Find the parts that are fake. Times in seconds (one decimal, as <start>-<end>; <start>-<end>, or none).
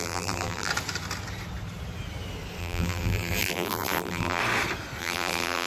0.0-0.7; 2.6-4.4; 5.0-5.7